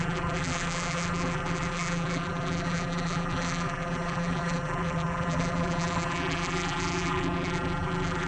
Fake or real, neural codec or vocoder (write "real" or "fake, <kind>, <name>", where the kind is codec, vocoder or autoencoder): fake, vocoder, BigVGAN v2